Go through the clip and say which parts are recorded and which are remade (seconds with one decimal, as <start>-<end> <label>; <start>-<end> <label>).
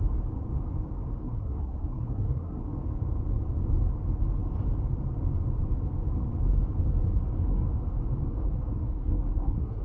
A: 0.0-1.2 recorded; 1.2-2.6 remade; 2.6-8.3 recorded; 8.3-9.8 remade